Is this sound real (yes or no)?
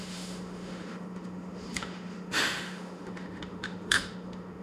no